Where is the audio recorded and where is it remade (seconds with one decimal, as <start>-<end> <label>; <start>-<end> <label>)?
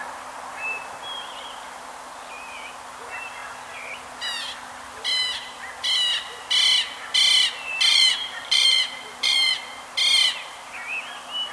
0.0-7.9 recorded; 7.9-9.6 remade; 9.6-11.5 recorded